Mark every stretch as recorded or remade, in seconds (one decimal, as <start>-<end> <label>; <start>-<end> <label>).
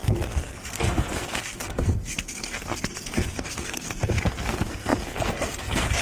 0.0-6.0 remade